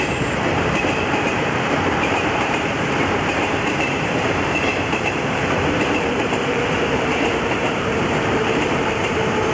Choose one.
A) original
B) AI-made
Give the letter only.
B